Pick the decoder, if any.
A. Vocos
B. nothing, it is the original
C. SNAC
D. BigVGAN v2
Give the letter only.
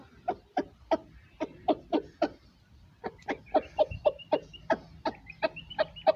B